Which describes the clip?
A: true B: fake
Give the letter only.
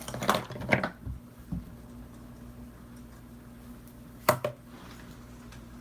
A